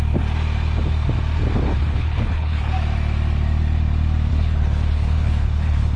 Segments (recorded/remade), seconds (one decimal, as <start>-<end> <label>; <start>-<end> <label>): 0.0-1.7 recorded; 1.7-2.7 remade; 2.7-4.3 recorded; 4.3-6.0 remade